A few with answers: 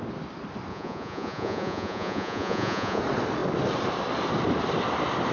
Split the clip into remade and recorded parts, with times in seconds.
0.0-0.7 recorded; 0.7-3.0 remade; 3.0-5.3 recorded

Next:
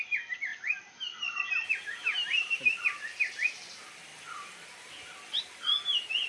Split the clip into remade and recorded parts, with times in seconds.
0.0-2.1 recorded; 2.1-2.7 remade; 2.7-6.3 recorded

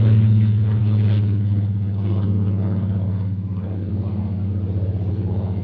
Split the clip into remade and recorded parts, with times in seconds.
0.0-4.6 remade; 4.6-5.1 recorded; 5.1-5.6 remade